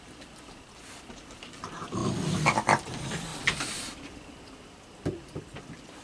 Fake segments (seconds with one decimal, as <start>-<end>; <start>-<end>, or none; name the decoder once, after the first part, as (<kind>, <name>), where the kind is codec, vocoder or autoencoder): 2.0-2.9 (vocoder, BigVGAN v2); 3.3-5.6